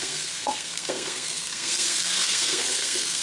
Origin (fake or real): fake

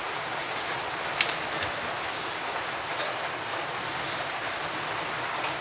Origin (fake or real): real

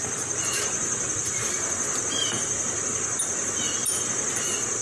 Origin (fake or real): real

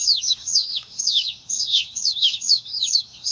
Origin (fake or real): fake